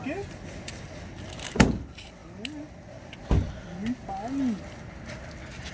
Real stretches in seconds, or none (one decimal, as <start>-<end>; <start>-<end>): 0.0-5.7